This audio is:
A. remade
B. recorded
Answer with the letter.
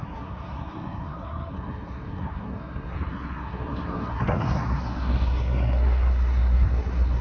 A